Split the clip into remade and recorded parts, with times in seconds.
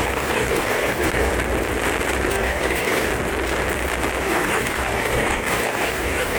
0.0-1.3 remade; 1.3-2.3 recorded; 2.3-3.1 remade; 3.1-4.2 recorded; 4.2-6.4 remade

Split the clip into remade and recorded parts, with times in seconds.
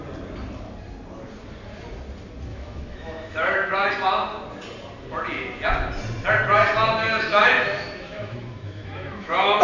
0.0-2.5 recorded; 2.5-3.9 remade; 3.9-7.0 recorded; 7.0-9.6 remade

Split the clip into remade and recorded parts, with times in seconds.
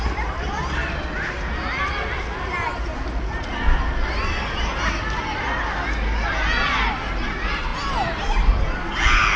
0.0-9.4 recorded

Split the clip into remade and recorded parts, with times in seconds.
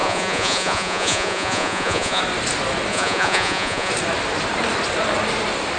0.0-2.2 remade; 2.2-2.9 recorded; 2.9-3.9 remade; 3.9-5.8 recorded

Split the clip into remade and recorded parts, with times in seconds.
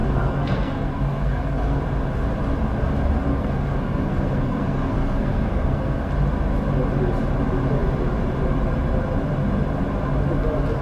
0.0-1.8 remade; 1.8-3.3 recorded; 3.3-6.1 remade; 6.1-10.8 recorded